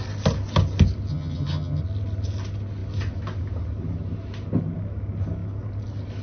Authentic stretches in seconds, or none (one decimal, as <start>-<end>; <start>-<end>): 0.0-1.1; 1.8-6.2